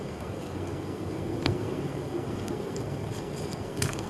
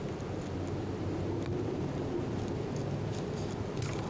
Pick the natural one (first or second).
second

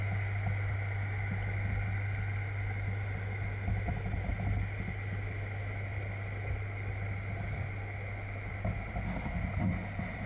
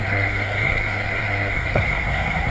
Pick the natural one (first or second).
first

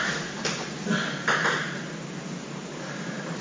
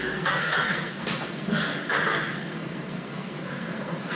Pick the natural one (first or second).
first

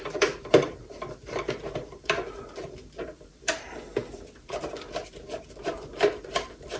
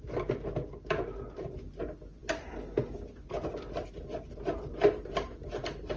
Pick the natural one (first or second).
second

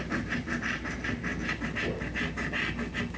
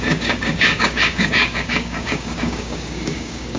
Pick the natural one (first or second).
first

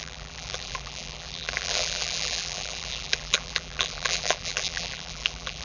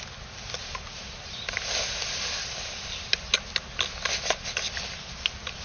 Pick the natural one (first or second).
second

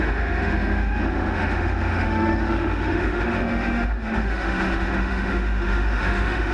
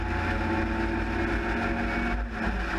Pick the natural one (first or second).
second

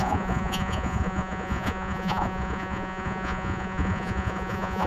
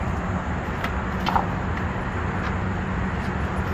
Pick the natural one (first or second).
second